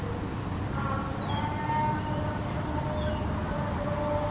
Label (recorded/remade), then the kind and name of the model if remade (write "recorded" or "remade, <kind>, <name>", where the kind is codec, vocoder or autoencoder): recorded